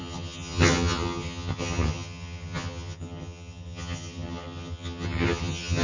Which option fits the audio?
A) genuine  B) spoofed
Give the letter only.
B